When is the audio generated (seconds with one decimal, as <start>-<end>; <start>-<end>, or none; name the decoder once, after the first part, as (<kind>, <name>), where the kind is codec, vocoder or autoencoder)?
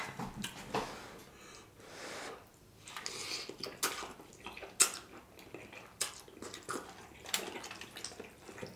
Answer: none